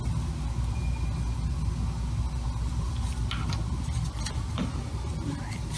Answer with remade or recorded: recorded